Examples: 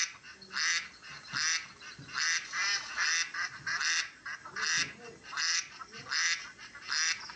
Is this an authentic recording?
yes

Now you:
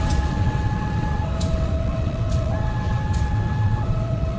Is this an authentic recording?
no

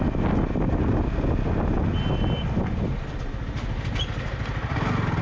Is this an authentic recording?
yes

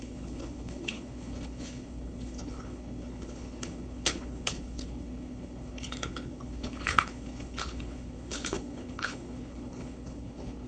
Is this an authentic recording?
no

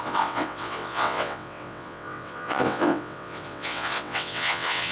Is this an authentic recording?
no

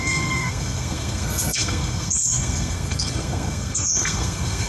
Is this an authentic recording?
no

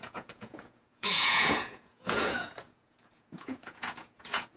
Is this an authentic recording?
no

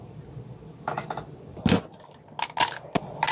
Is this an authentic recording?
yes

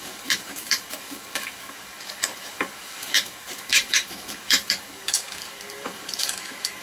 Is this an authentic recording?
no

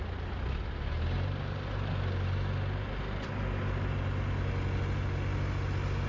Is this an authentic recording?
yes